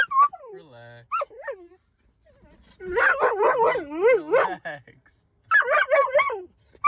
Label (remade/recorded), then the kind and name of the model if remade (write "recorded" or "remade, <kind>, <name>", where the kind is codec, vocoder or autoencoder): recorded